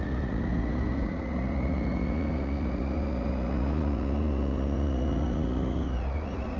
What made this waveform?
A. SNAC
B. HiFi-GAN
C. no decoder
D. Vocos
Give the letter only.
D